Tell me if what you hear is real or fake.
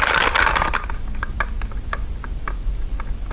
real